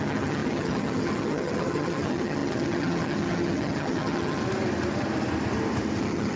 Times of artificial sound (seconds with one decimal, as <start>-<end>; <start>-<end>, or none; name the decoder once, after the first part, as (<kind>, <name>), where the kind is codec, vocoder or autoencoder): 0.0-4.4 (vocoder, HiFi-GAN); 6.0-6.4